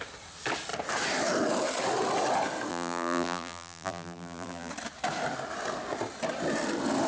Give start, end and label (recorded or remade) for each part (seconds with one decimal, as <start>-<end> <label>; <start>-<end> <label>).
0.0-2.7 recorded; 2.7-4.7 remade; 4.7-7.1 recorded